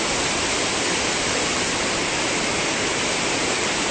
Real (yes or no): yes